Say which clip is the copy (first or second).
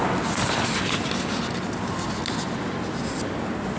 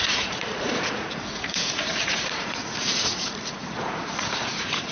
second